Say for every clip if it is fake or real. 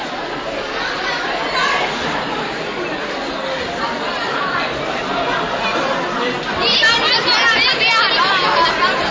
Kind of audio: real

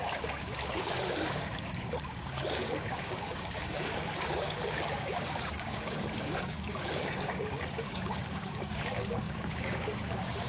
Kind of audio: fake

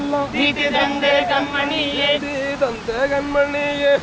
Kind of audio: real